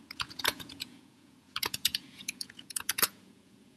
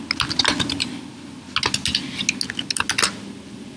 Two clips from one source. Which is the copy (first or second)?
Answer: first